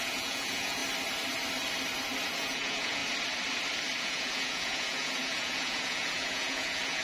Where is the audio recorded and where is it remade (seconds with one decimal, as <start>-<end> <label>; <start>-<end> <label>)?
0.0-0.8 remade; 0.8-2.2 recorded; 2.2-3.0 remade; 3.0-4.0 recorded; 4.0-7.0 remade